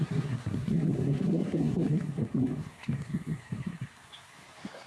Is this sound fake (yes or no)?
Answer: yes